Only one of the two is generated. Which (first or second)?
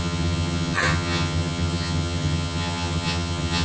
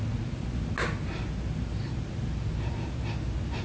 first